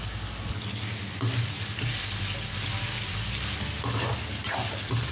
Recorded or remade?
recorded